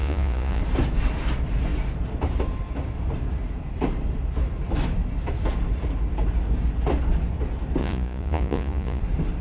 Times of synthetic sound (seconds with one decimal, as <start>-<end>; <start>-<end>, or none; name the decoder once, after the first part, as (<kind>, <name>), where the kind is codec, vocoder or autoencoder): 0.0-0.6 (vocoder, Vocos); 7.8-9.0